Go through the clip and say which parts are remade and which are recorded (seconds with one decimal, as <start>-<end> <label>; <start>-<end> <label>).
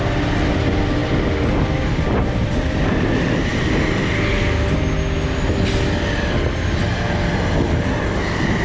0.0-8.6 recorded